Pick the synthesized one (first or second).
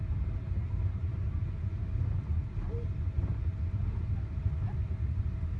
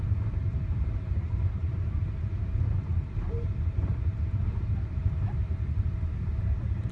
second